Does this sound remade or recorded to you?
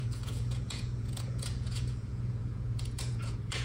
remade